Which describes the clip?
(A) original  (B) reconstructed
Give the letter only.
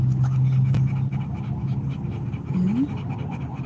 A